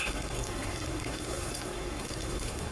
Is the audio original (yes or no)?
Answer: no